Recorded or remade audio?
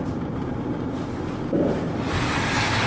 recorded